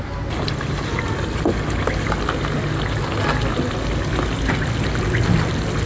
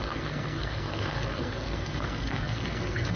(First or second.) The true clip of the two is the first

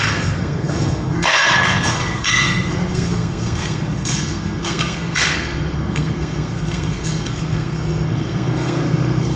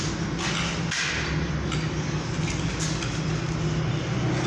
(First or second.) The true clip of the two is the second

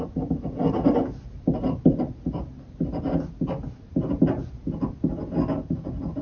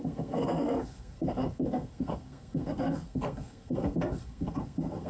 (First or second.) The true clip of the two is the first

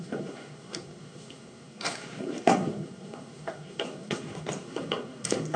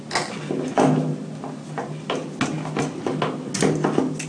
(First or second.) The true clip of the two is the second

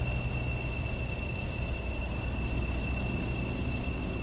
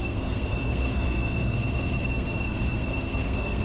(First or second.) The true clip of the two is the first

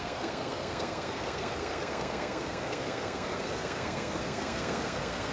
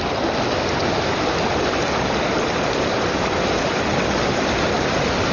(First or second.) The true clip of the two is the second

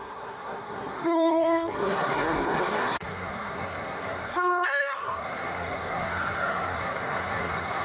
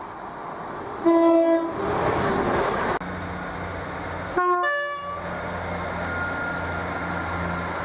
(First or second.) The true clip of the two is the second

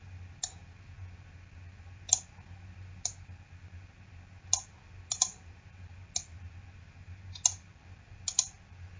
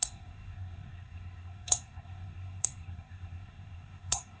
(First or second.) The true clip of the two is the first